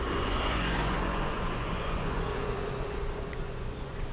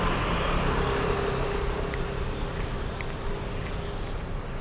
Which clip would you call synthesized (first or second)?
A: first